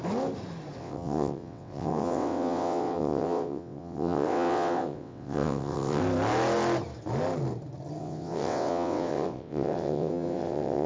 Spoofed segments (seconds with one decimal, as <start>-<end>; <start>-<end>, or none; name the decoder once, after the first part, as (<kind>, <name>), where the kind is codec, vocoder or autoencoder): 0.8-6.0 (vocoder, WaveNeXt); 8.0-10.9